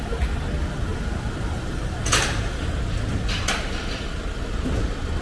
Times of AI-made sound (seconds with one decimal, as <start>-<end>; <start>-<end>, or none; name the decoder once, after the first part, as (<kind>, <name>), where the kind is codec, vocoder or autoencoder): none